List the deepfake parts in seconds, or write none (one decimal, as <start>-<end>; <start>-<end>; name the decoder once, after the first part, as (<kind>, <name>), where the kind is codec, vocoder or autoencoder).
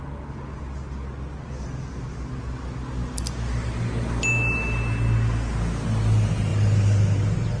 none